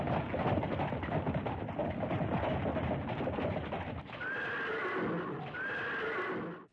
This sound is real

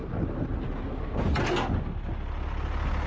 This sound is real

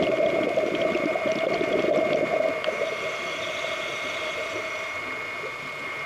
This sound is real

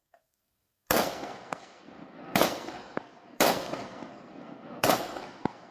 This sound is fake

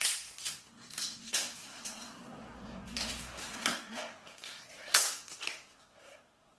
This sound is fake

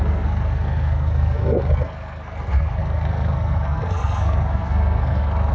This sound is fake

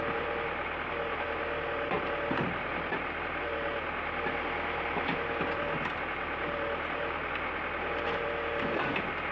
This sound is real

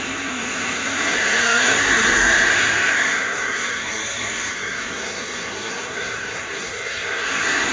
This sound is fake